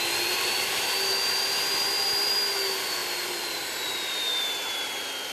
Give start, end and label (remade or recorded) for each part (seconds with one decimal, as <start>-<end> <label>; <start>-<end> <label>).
0.0-5.3 remade

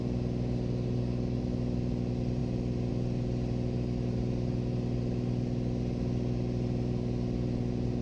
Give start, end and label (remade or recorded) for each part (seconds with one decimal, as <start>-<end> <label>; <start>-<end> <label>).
0.0-8.0 recorded